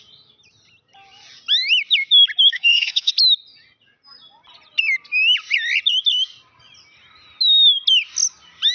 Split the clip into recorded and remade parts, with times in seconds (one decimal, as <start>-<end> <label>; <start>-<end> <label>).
0.0-2.5 recorded; 2.5-3.1 remade; 3.1-8.7 recorded